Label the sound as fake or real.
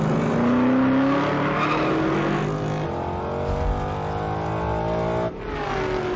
real